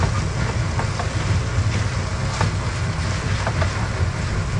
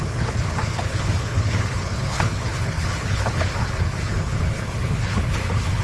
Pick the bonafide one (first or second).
first